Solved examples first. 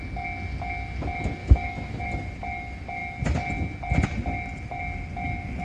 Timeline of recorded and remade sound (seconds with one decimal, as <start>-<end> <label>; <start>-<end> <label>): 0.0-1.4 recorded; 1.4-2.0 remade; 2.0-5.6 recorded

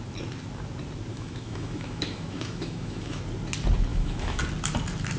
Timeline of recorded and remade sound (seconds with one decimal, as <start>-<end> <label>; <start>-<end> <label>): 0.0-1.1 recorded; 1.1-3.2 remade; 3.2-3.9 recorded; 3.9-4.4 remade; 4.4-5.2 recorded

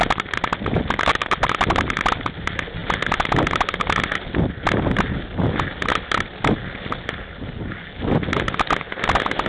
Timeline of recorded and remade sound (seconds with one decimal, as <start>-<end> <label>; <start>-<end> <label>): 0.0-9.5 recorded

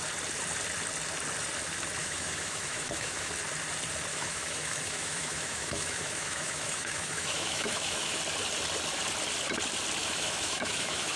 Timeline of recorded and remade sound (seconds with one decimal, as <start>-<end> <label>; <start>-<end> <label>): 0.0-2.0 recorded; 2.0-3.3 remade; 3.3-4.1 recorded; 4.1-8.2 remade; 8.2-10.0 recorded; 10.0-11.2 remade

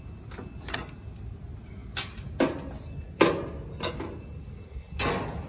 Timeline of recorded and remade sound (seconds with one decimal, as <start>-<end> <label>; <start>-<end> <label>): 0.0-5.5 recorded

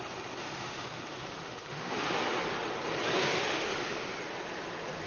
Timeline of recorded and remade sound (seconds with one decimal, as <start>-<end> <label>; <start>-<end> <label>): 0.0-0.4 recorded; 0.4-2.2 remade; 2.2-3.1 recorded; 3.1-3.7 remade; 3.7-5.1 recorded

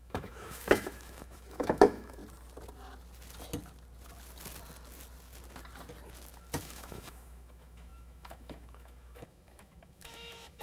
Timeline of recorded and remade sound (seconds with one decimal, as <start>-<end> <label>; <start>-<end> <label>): 0.0-2.2 remade; 2.2-6.6 recorded; 6.6-10.6 remade

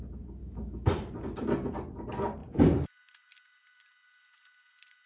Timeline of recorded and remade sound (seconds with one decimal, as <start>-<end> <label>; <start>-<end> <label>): 0.0-0.4 recorded; 0.4-0.9 remade; 0.9-5.1 recorded